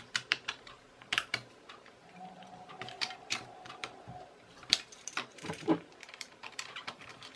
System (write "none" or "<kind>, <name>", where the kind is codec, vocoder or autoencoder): vocoder, BigVGAN v2